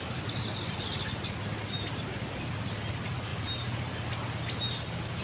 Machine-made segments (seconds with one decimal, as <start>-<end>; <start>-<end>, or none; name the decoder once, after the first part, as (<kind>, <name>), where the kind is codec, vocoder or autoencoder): none